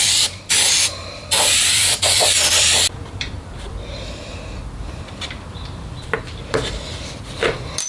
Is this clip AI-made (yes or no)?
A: yes